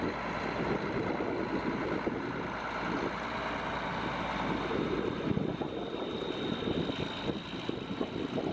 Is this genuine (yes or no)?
yes